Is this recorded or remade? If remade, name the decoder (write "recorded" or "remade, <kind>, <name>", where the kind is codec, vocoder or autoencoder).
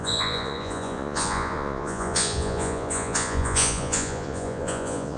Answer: remade, vocoder, Vocos